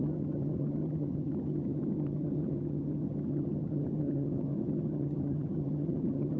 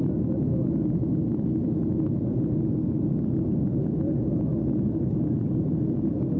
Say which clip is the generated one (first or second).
first